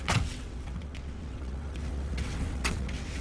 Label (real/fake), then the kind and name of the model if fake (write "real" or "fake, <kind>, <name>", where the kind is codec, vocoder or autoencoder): fake, vocoder, WaveNeXt